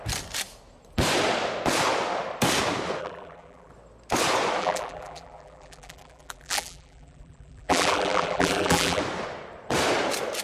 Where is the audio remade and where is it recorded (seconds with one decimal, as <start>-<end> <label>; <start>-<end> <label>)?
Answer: 0.0-3.0 recorded; 3.0-3.7 remade; 3.7-4.6 recorded; 4.6-9.0 remade; 9.0-10.4 recorded